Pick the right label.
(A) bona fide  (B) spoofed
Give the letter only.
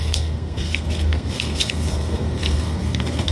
B